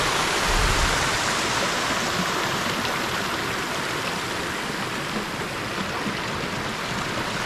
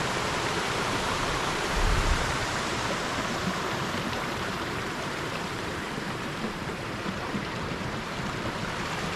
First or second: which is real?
first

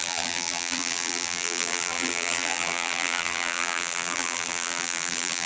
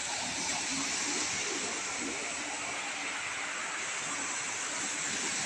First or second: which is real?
second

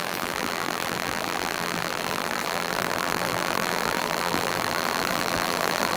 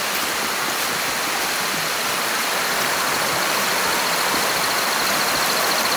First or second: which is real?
second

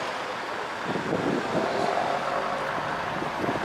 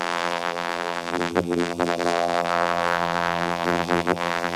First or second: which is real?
first